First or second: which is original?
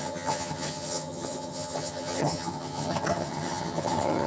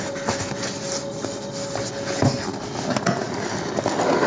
second